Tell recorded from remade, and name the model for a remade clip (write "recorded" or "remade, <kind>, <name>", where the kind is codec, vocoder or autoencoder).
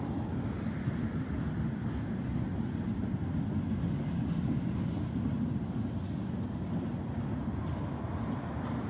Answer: recorded